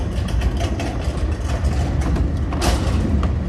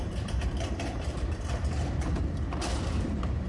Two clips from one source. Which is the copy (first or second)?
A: second